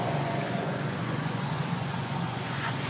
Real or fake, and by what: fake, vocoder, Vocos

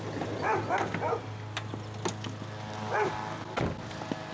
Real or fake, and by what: real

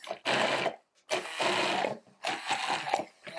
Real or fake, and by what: real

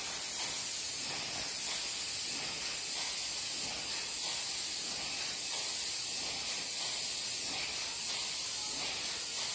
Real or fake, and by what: real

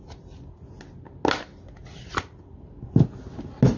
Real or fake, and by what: real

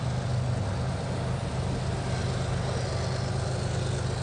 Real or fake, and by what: real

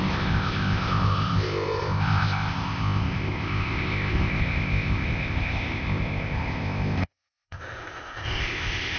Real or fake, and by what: fake, codec, ZipCodec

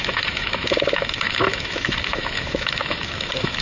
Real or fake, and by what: fake, autoencoder, DAC-VAE